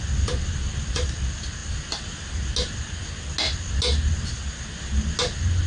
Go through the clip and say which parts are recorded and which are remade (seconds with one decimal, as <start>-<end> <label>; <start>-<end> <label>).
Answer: 0.0-5.7 recorded